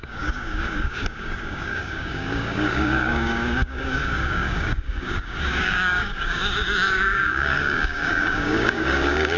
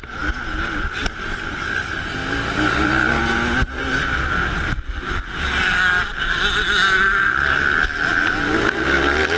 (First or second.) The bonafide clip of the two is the second